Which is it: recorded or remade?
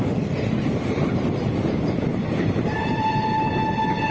recorded